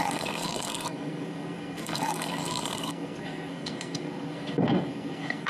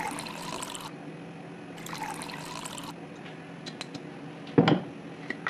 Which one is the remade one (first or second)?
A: first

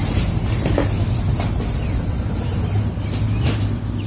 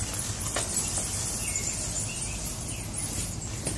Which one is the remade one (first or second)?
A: first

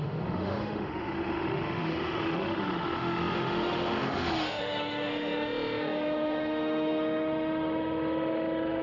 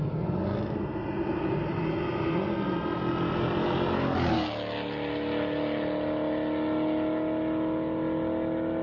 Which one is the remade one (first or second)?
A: first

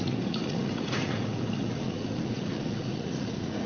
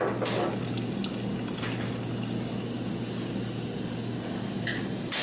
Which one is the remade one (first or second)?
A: first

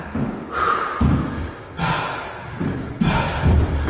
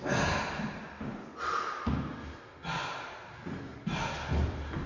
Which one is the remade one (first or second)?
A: first